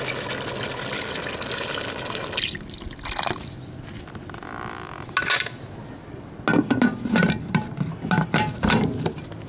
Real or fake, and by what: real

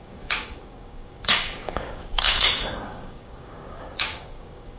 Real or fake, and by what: fake, codec, DAC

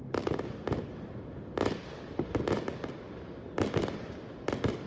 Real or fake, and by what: real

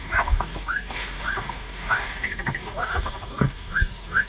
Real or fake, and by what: fake, codec, DAC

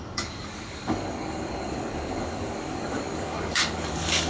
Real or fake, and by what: fake, codec, DAC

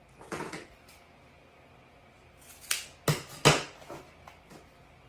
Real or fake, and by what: real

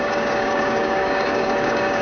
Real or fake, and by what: fake, codec, DAC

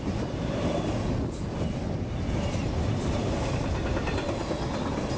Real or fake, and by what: real